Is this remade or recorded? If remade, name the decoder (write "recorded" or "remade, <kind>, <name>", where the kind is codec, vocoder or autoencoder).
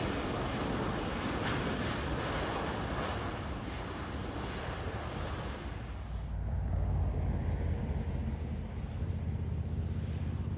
recorded